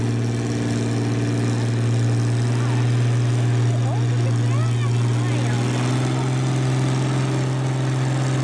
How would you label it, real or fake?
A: real